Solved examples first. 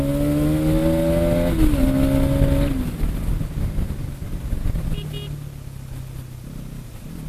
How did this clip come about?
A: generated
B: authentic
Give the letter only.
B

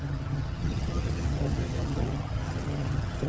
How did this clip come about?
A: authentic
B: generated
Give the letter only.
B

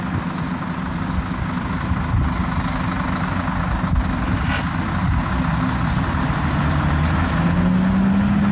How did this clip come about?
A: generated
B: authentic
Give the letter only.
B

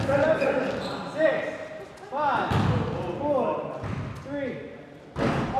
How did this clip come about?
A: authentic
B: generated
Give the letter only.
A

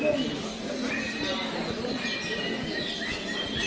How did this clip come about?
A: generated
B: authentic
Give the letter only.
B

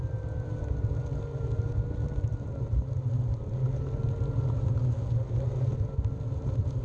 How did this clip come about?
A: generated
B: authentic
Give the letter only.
B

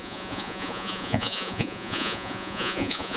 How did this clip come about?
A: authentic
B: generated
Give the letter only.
B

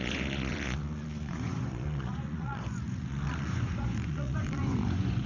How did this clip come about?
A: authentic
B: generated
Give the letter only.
B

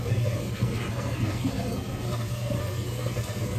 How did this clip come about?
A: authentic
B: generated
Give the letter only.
B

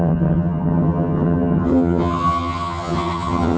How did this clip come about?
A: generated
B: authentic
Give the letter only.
A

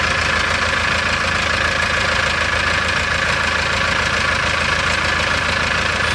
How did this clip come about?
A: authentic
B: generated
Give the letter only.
A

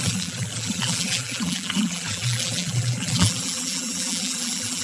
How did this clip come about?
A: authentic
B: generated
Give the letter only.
B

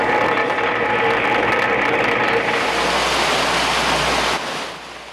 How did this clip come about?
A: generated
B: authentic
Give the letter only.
B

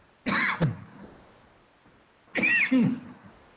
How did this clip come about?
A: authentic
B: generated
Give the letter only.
A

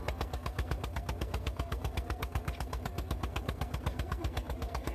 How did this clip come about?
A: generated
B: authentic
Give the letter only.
A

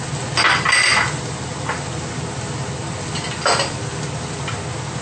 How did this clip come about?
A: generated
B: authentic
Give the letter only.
B